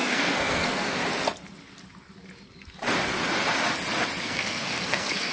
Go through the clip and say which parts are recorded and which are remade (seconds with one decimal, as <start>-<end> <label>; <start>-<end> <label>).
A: 0.0-1.0 remade; 1.0-4.2 recorded; 4.2-5.3 remade